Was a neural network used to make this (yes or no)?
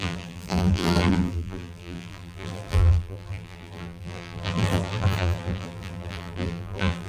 yes